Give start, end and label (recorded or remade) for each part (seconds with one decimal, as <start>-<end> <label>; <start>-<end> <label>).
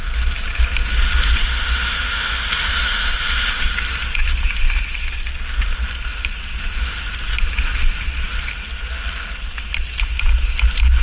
0.0-1.4 recorded; 1.4-3.7 remade; 3.7-11.0 recorded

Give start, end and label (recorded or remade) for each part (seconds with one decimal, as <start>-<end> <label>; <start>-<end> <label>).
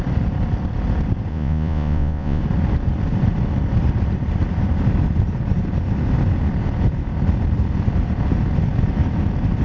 0.0-1.3 recorded; 1.3-2.4 remade; 2.4-9.6 recorded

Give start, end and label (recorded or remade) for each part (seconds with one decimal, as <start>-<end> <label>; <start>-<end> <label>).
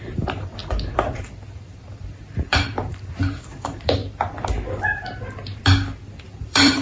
0.0-4.0 remade; 4.0-6.2 recorded; 6.2-6.8 remade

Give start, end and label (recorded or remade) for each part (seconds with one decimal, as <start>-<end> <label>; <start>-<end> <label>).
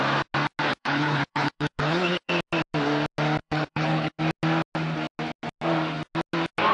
0.0-0.7 recorded; 0.7-2.3 remade; 2.3-3.4 recorded; 3.4-4.2 remade; 4.2-6.7 recorded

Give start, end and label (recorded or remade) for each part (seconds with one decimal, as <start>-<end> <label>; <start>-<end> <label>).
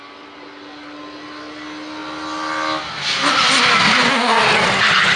0.0-5.2 recorded